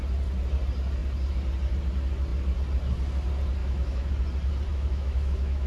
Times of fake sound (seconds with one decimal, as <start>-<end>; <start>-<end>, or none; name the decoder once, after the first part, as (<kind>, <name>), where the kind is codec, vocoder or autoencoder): 3.6-4.1 (autoencoder, DAC-VAE); 4.7-5.7